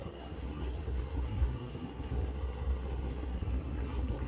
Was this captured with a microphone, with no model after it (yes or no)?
no